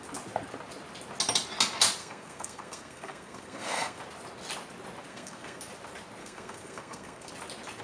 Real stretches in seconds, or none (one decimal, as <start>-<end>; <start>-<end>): 0.0-2.0; 4.0-5.1; 5.6-6.2; 7.3-7.8